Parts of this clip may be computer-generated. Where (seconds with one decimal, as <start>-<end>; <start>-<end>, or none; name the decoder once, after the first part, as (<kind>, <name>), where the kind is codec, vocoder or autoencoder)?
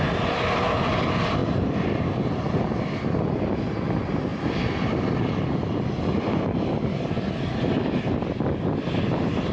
none